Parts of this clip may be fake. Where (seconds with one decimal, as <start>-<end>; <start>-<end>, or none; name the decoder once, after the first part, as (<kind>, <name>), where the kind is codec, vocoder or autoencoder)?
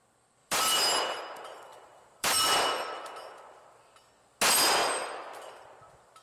0.4-1.2 (vocoder, BigVGAN v2); 1.7-2.5; 4.8-5.8